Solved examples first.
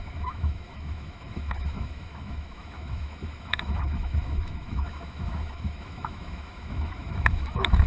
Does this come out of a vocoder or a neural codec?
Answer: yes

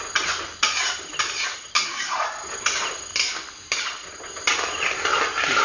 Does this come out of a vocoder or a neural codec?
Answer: no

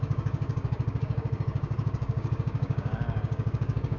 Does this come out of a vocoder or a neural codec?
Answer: yes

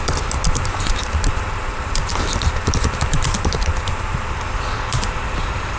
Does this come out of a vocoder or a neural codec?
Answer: yes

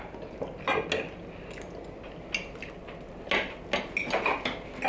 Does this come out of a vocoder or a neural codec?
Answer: no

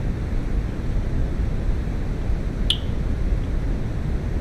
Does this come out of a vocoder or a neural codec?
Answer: no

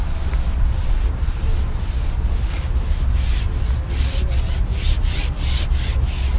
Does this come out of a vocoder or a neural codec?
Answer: no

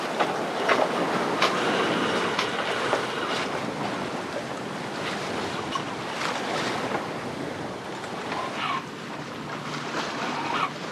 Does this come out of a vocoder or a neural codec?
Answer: no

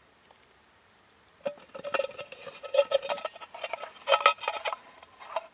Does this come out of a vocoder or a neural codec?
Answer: no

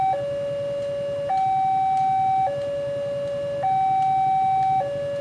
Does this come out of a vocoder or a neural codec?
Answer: no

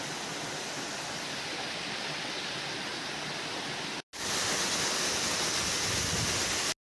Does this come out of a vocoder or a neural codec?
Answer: no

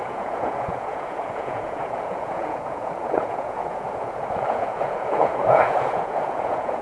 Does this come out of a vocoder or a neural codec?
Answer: yes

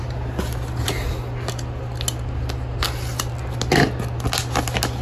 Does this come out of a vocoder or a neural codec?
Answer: no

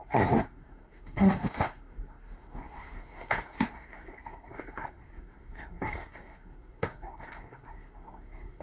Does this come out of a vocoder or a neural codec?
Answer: yes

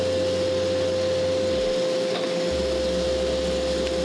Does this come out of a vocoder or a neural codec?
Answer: no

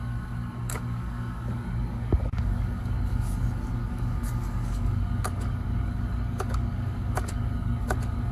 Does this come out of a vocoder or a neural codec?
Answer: yes